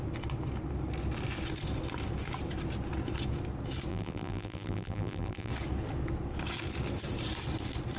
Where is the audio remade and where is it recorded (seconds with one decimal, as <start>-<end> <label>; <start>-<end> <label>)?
0.0-3.9 recorded; 3.9-5.5 remade; 5.5-8.0 recorded